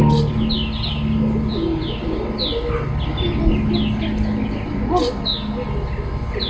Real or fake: real